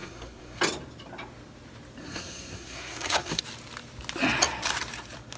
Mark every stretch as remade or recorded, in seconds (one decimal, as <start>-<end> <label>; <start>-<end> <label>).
0.0-0.6 remade; 0.6-2.0 recorded; 2.0-3.4 remade; 3.4-5.4 recorded